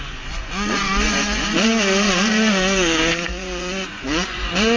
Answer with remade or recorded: remade